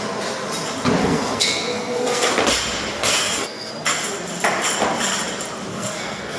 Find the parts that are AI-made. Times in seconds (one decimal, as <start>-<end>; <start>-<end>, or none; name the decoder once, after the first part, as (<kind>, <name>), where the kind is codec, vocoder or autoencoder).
1.0-2.3 (codec, SNAC); 2.9-3.7; 5.7-6.4